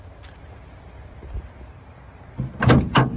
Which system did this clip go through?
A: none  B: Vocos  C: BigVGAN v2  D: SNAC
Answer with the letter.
A